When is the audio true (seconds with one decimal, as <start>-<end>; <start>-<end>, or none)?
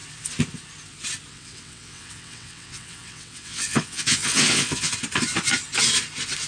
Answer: 0.0-1.3; 4.9-6.5